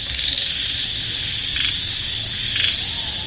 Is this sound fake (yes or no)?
no